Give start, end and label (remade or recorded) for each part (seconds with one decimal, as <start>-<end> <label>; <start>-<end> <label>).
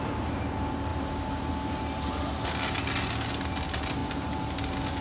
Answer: 0.0-5.0 recorded